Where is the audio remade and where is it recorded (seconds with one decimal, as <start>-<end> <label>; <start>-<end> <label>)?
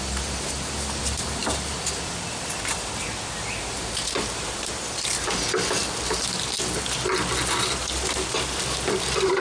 0.0-9.4 recorded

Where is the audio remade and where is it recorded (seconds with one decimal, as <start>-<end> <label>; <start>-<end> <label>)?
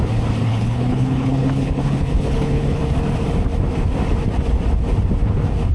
0.0-0.4 recorded; 0.4-2.8 remade; 2.8-5.7 recorded